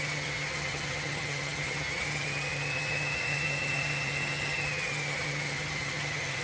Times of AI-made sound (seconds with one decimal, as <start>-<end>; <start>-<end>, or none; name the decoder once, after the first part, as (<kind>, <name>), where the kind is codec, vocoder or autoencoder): 0.0-6.4 (vocoder, HiFi-GAN)